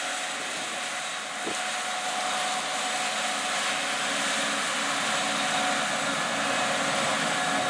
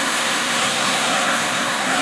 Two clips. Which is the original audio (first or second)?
first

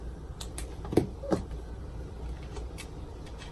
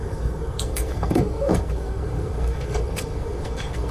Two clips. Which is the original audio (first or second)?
first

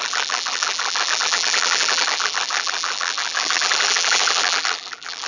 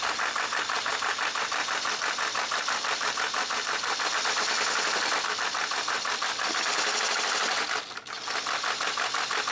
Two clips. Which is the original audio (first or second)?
second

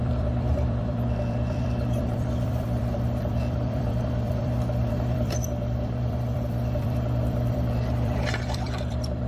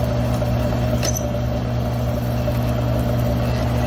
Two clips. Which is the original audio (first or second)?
second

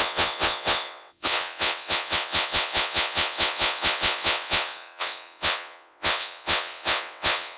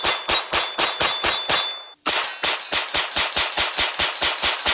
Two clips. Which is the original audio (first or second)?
second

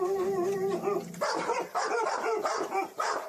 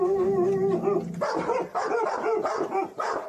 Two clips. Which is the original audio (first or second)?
second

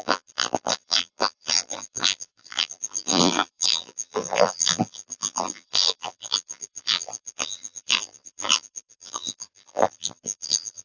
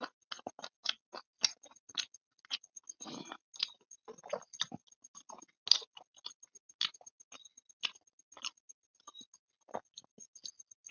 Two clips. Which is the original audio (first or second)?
second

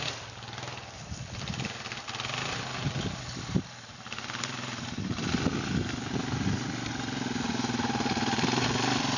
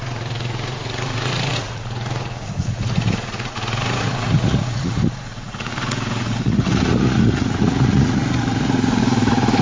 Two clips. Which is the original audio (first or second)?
first